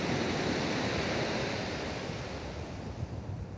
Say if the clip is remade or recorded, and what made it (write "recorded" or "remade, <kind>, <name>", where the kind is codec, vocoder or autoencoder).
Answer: remade, vocoder, BigVGAN v2